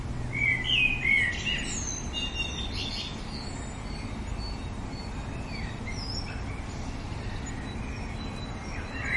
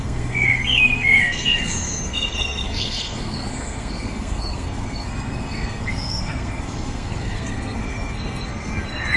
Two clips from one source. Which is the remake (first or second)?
second